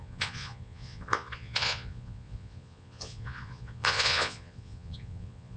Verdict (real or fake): fake